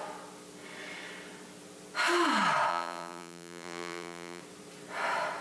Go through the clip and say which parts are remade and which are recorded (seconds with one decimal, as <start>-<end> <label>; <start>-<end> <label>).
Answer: 0.0-2.7 recorded; 2.7-4.4 remade; 4.4-5.4 recorded